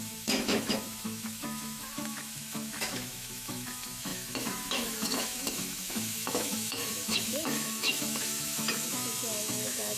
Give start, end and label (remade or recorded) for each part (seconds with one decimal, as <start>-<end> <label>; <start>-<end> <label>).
0.0-10.0 remade